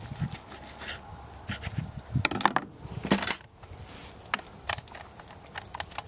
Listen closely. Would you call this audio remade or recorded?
recorded